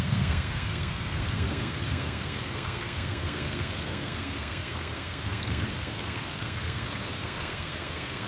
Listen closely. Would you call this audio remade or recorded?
remade